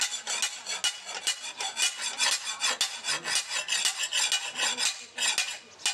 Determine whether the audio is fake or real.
real